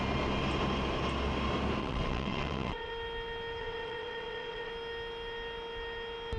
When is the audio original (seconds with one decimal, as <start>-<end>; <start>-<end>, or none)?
0.0-1.8; 2.9-3.6; 4.7-6.4